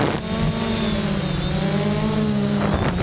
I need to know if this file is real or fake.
real